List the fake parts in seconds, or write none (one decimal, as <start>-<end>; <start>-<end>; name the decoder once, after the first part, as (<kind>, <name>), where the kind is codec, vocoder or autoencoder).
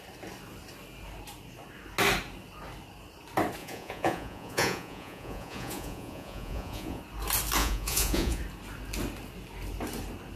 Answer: 3.6-7.0 (vocoder, Vocos); 7.6-8.4